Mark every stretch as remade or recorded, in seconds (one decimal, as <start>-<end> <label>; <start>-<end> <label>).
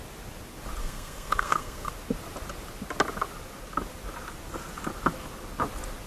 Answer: 0.0-0.8 recorded; 0.8-1.9 remade; 1.9-6.1 recorded